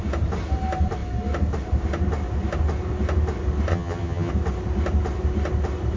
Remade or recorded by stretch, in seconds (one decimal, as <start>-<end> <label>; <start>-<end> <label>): 0.0-3.7 recorded; 3.7-4.3 remade; 4.3-6.0 recorded